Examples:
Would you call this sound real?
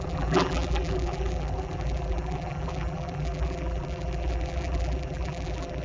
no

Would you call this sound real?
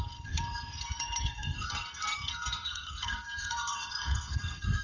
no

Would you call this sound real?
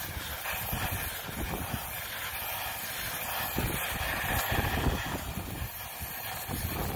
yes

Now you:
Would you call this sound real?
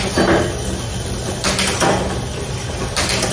yes